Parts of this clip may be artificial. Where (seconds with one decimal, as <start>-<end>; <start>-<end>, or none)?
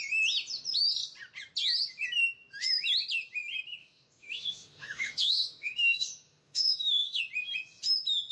3.8-7.2